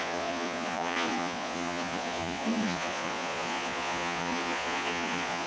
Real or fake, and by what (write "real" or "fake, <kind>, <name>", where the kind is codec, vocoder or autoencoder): fake, vocoder, Vocos